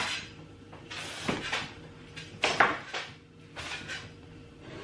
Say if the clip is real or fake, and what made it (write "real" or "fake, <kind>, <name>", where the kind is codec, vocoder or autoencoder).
real